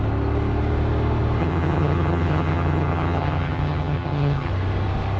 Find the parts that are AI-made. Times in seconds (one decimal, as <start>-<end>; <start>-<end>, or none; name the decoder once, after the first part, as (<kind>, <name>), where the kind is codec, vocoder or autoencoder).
1.4-4.5 (vocoder, HiFi-GAN)